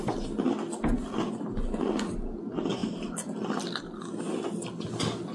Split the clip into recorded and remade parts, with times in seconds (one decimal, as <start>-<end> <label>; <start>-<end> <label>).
0.0-5.3 recorded